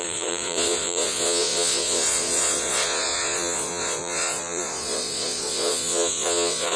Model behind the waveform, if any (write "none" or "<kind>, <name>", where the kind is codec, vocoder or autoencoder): vocoder, Vocos